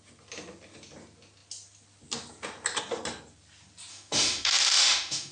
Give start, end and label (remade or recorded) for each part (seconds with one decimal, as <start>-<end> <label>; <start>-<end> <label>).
0.0-3.9 recorded; 3.9-5.3 remade